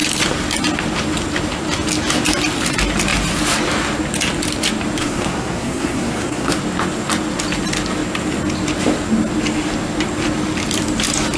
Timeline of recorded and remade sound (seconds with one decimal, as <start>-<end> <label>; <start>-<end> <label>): 0.0-5.0 recorded; 5.0-6.6 remade; 6.6-11.4 recorded

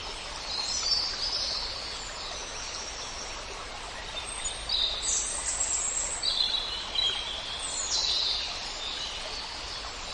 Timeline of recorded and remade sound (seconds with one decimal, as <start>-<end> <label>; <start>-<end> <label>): 0.0-10.1 recorded